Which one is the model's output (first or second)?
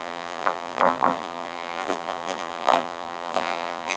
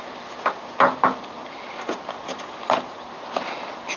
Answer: first